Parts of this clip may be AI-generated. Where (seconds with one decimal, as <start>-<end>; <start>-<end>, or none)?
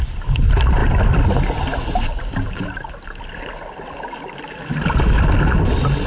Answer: none